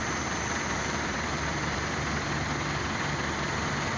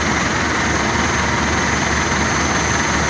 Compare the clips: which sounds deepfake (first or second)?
first